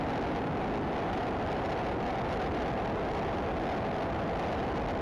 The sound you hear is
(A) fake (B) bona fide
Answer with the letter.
B